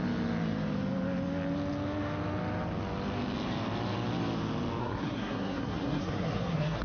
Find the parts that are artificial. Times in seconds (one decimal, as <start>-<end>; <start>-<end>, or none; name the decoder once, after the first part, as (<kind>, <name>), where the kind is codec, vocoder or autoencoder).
4.8-6.8 (codec, SNAC)